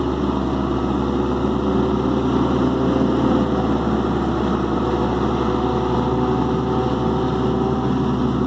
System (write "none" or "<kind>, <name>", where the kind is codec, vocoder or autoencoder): none